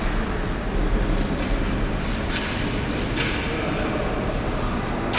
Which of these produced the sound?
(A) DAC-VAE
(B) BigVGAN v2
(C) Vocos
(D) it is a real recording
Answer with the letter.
B